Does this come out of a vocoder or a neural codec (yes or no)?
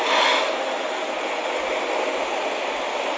no